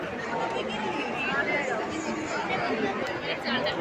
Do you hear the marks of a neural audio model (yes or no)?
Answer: no